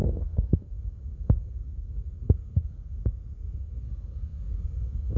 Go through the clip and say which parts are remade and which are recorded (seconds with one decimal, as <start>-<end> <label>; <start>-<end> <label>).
0.0-5.2 remade

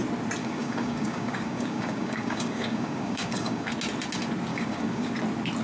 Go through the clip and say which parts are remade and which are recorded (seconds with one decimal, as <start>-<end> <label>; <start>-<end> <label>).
0.0-0.4 recorded; 0.4-3.7 remade; 3.7-4.5 recorded; 4.5-5.1 remade; 5.1-5.6 recorded

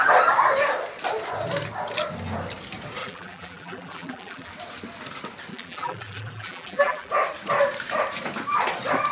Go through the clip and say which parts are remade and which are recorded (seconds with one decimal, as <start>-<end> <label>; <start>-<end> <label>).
0.0-3.0 recorded; 3.0-4.5 remade; 4.5-5.5 recorded; 5.5-7.1 remade; 7.1-9.1 recorded